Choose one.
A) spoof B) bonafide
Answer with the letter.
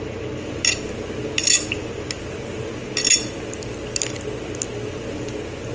B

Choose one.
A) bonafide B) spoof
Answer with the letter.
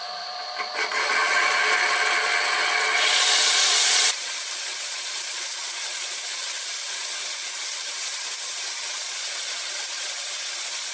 B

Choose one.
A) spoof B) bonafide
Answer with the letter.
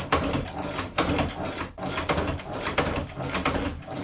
B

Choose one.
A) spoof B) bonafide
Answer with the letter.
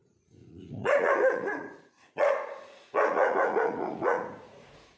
A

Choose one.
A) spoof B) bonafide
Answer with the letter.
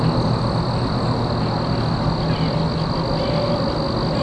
B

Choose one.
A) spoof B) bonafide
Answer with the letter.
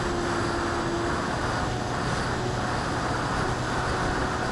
B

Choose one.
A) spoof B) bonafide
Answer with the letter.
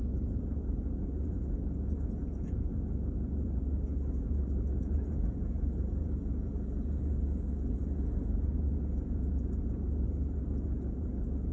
A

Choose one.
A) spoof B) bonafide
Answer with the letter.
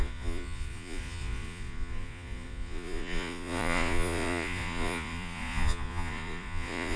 A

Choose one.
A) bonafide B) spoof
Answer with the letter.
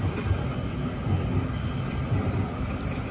A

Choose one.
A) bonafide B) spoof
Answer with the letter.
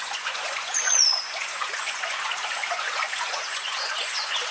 B